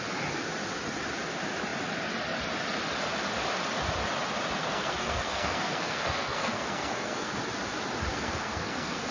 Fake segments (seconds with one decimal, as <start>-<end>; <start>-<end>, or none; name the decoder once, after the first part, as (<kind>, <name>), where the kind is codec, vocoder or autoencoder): 4.6-7.4 (codec, SNAC); 8.1-9.1